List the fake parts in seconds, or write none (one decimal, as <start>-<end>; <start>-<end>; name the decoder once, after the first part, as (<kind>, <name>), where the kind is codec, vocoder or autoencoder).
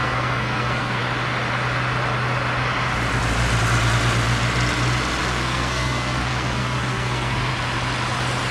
0.0-1.0 (codec, SNAC); 5.2-7.5